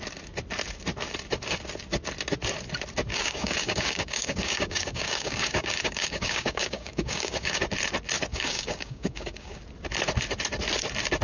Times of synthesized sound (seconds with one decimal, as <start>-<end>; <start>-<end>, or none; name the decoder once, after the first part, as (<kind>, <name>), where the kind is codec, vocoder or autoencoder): 3.1-7.6 (codec, DAC); 8.3-9.6